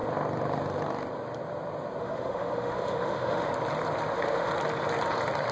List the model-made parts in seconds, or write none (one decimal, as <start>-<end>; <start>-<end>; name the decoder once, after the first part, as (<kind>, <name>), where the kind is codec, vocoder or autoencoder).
2.0-3.5 (autoencoder, DAC-VAE); 4.1-4.5